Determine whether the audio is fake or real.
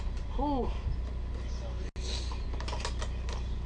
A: real